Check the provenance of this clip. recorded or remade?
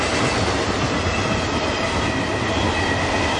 recorded